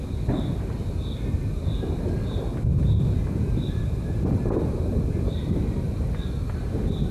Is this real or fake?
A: real